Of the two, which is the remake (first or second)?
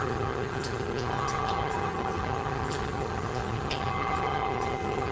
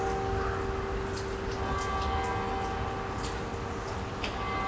first